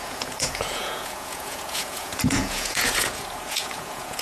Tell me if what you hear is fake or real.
fake